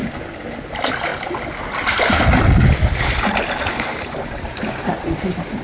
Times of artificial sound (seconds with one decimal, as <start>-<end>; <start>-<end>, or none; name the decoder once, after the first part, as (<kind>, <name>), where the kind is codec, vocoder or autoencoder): 0.6-1.1 (vocoder, BigVGAN v2); 3.8-5.6

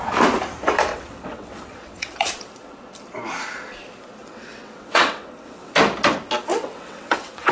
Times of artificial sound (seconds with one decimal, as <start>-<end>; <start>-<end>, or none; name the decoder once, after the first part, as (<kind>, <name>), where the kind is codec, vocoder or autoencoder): 0.9-2.3 (vocoder, WaveNeXt); 4.2-5.8; 6.5-7.5

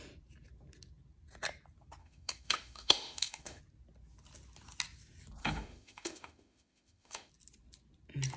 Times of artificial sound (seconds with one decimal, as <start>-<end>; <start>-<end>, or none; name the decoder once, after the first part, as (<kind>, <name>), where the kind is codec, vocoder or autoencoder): 2.0-3.6 (autoencoder, DAC-VAE); 5.4-7.3

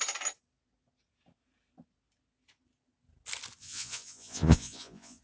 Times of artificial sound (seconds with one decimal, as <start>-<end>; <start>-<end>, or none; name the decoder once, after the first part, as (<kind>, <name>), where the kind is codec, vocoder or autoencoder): 3.6-5.2 (vocoder, Vocos)

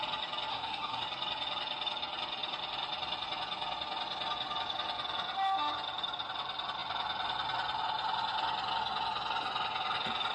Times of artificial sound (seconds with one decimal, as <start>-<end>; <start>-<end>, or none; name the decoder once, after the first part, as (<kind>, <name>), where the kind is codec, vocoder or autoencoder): 0.5-1.0 (codec, SNAC)